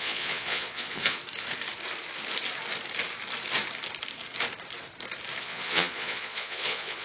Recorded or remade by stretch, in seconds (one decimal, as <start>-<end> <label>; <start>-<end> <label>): 0.0-1.2 remade; 1.2-5.4 recorded; 5.4-7.0 remade